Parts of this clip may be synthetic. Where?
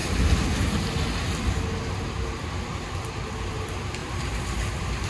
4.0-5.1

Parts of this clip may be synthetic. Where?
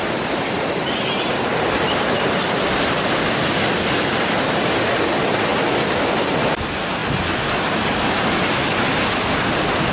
7.0-8.3